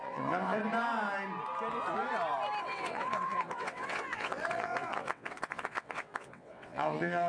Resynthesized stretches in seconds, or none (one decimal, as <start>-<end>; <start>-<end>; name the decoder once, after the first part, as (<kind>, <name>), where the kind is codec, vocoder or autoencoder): 0.0-0.6 (vocoder, WaveNeXt); 2.6-7.3